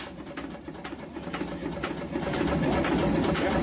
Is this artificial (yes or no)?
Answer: yes